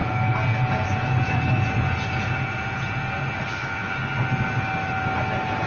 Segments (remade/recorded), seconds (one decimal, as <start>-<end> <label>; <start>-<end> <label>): 0.0-3.4 remade; 3.4-5.7 recorded

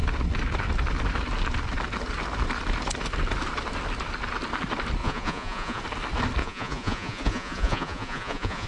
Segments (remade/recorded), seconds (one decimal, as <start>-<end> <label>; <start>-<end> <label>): 0.0-5.0 recorded; 5.0-5.8 remade; 5.8-6.4 recorded; 6.4-8.7 remade

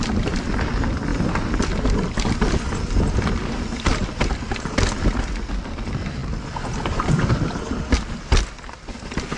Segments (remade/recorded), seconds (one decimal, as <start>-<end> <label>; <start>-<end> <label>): 0.0-9.4 recorded

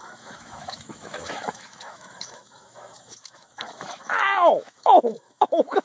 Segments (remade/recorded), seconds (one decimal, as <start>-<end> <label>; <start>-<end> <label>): 0.0-5.8 remade

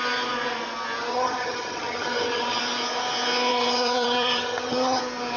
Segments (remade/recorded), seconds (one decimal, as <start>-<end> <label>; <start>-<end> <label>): 0.0-1.1 recorded; 1.1-2.6 remade; 2.6-3.5 recorded; 3.5-5.0 remade; 5.0-5.4 recorded

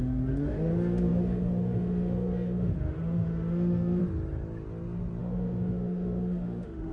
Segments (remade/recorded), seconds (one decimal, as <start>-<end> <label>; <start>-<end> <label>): 0.0-4.0 remade; 4.0-5.2 recorded; 5.2-6.9 remade

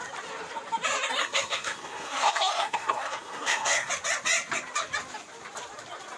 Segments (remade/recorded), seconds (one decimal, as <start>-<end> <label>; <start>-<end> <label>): 0.0-1.2 recorded; 1.2-3.9 remade; 3.9-6.2 recorded

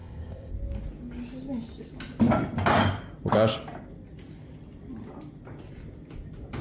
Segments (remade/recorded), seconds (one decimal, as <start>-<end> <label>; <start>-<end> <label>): 0.0-0.5 remade; 0.5-6.6 recorded